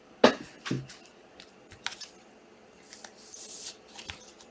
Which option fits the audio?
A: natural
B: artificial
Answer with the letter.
A